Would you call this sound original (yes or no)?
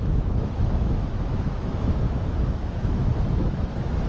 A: no